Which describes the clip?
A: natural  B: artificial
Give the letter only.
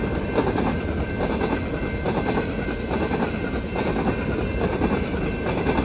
A